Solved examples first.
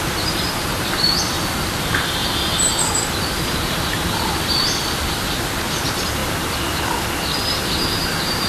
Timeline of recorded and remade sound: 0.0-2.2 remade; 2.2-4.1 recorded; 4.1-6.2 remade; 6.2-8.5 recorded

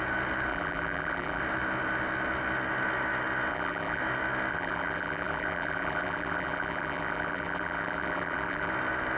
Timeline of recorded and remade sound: 0.0-0.5 recorded; 0.5-1.4 remade; 1.4-3.5 recorded; 3.5-4.0 remade; 4.0-4.5 recorded; 4.5-8.7 remade; 8.7-9.2 recorded

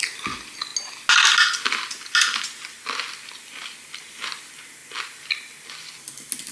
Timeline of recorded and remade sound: 0.0-6.5 recorded

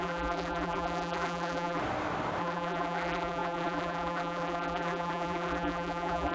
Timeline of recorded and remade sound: 0.0-1.8 remade; 1.8-2.4 recorded; 2.4-6.3 remade

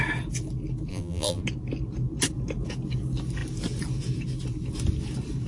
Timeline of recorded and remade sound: 0.0-0.9 recorded; 0.9-1.4 remade; 1.4-5.5 recorded